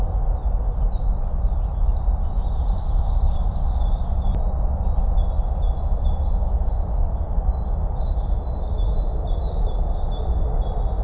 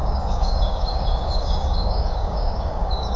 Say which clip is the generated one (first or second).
second